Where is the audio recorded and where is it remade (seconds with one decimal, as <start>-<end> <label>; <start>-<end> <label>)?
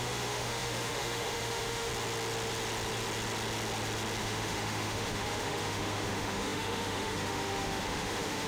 0.0-1.9 remade; 1.9-4.2 recorded; 4.2-8.5 remade